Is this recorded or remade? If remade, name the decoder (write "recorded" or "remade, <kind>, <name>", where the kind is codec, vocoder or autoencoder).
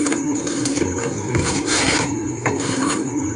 remade, codec, SNAC